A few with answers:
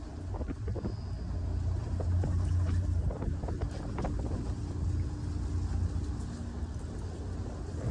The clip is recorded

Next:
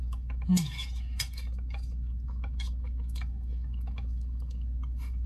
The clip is remade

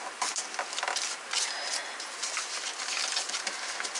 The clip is recorded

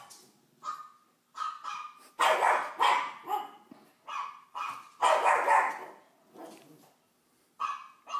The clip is recorded